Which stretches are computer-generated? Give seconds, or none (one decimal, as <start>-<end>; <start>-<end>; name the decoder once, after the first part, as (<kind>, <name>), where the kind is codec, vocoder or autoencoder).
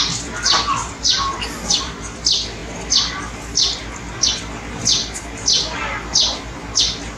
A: 0.0-2.6 (vocoder, BigVGAN v2); 6.8-7.2